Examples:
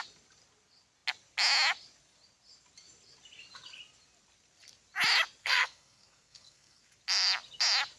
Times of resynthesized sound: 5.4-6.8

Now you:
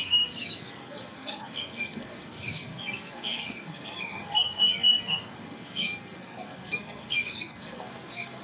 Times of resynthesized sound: 0.0-8.4

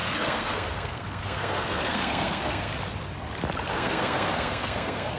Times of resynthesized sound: 0.0-2.7; 3.7-5.2